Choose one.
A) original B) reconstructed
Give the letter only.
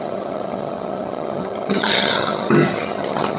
B